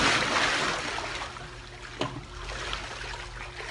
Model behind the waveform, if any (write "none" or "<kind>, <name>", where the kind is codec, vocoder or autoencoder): none